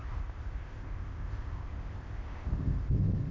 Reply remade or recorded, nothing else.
remade